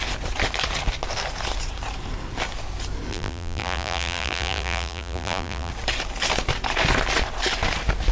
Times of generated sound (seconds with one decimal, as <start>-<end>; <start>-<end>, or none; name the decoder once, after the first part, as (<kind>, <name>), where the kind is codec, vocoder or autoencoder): 3.1-5.7 (vocoder, BigVGAN v2)